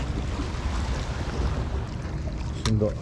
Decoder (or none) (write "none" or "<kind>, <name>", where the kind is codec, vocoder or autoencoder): none